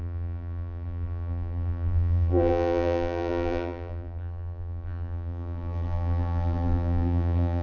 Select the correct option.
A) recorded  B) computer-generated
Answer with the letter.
B